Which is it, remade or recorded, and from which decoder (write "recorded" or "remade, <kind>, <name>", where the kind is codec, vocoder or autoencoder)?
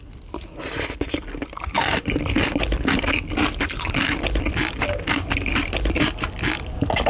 recorded